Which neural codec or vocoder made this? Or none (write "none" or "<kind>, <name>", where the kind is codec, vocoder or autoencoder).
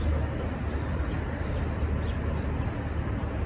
none